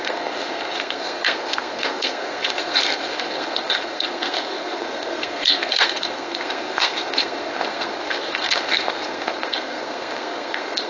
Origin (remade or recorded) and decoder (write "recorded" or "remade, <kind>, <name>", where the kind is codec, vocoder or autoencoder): remade, codec, SNAC